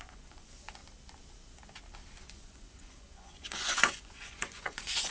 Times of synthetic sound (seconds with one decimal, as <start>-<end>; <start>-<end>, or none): 0.0-0.8; 2.2-5.1